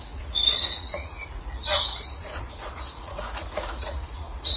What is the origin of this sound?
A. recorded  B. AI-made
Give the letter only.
B